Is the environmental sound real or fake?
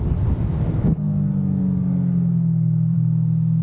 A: fake